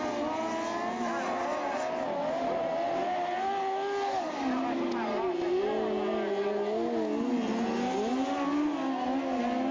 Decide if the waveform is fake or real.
real